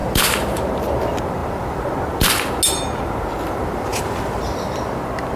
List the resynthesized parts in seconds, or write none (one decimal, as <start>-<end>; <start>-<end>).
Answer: 0.0-0.7; 3.9-4.8